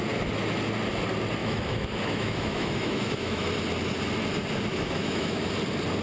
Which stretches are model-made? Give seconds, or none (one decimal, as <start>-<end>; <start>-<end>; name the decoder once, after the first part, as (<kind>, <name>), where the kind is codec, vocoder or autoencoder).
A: 1.4-3.5 (autoencoder, DAC-VAE); 4.7-5.5